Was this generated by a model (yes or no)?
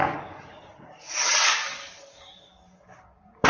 yes